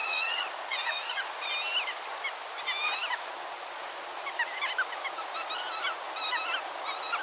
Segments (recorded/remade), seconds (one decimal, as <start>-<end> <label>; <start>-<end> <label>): 0.0-1.3 remade; 1.3-7.2 recorded